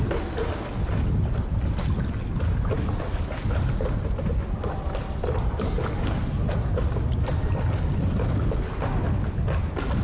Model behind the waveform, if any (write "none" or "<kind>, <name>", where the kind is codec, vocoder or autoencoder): none